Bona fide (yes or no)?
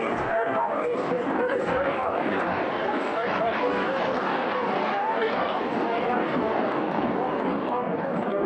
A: no